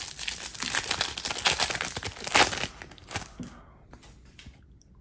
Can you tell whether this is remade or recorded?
recorded